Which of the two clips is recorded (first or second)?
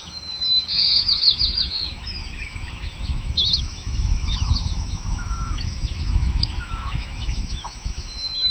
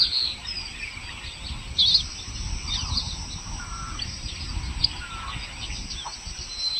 second